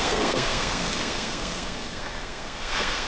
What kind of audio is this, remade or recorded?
remade